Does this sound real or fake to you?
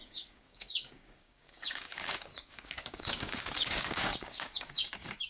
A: fake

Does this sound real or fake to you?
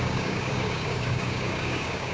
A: fake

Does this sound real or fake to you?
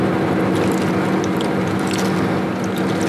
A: real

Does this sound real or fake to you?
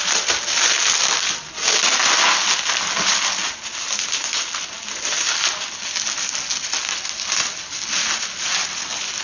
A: real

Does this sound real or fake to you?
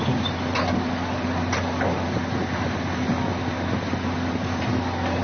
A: real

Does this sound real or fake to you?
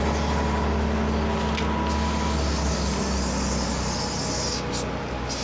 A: real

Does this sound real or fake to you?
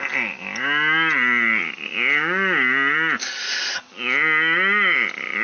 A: real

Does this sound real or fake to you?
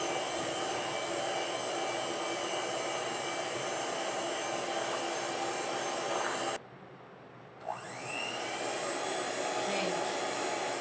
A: real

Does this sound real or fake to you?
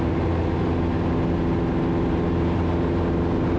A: real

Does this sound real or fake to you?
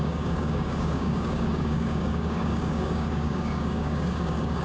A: fake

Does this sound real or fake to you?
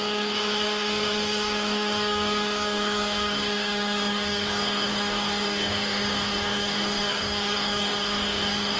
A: fake